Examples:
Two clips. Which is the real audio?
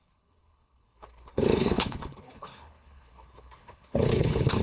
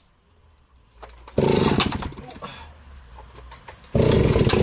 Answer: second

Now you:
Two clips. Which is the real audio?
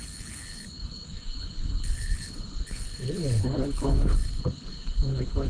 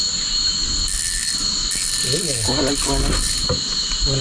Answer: second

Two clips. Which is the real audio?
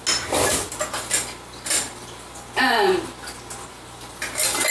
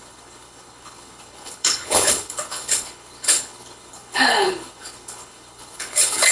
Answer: first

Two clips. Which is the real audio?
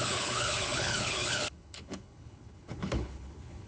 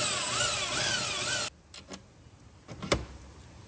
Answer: second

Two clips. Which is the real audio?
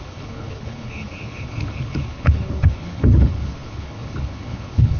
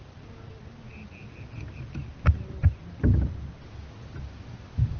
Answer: second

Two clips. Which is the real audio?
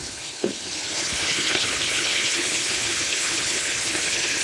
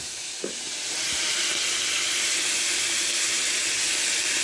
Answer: second